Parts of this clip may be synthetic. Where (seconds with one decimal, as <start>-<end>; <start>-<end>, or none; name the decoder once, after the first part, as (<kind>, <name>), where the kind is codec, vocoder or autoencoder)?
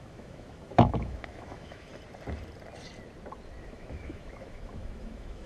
0.0-1.9 (autoencoder, DAC-VAE); 3.6-5.5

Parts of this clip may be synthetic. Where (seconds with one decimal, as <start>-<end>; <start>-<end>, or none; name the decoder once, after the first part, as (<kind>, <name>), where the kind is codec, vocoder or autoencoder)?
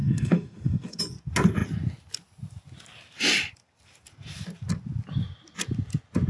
0.0-1.0 (codec, SNAC)